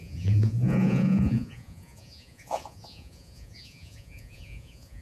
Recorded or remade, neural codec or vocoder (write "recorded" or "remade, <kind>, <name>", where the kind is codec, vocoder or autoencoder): remade, vocoder, Vocos